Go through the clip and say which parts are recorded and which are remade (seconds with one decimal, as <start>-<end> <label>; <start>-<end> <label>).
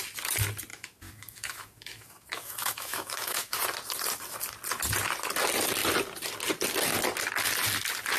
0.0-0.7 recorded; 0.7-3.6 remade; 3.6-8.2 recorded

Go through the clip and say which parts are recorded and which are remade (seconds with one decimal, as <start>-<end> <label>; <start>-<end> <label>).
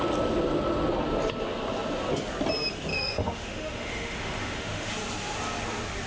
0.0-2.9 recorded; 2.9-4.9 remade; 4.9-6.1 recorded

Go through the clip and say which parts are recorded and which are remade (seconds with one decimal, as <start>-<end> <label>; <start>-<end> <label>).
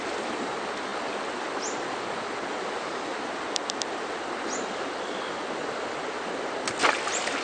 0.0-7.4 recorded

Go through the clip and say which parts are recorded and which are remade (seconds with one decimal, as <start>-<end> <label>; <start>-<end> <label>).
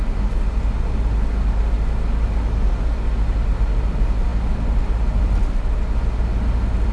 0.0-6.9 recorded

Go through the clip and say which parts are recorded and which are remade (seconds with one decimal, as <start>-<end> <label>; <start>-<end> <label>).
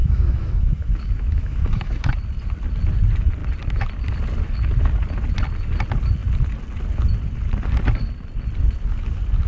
0.0-2.1 remade; 2.1-9.5 recorded